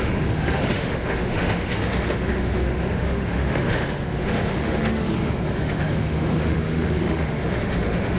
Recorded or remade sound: remade